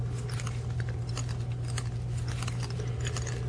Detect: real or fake real